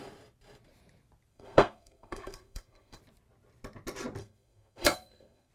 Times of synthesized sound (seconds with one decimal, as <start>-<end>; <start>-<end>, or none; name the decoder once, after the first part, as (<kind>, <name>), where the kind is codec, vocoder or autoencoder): 1.3-3.0 (codec, SNAC); 4.2-5.5